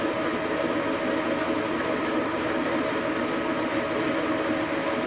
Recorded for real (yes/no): yes